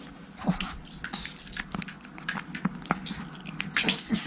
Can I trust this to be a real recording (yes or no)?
yes